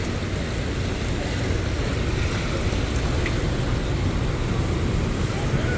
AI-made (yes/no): no